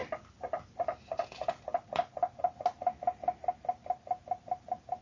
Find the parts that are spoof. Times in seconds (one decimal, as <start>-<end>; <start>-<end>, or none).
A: none